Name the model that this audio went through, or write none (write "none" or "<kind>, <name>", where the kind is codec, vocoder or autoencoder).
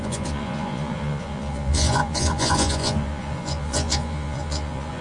vocoder, Vocos